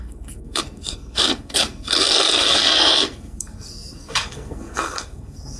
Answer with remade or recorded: remade